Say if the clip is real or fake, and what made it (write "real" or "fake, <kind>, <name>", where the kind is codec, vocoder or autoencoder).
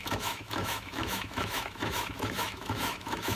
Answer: fake, autoencoder, DAC-VAE